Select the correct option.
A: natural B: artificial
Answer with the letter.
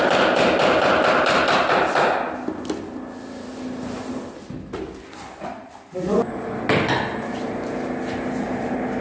A